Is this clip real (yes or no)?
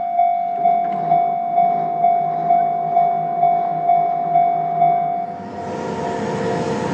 yes